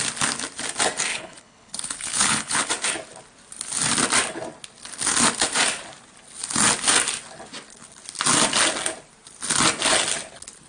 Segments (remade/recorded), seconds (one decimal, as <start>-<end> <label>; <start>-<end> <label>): 0.0-1.1 recorded; 1.1-2.7 remade; 2.7-10.7 recorded